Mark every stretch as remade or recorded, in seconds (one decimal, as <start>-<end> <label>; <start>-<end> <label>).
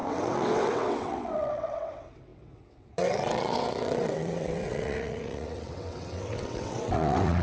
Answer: 0.0-7.4 remade